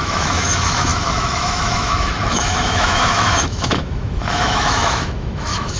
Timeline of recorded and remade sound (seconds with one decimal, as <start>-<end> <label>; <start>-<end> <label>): 0.0-5.8 remade